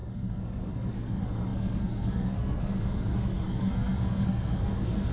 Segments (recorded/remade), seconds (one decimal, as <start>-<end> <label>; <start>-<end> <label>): 0.0-5.1 remade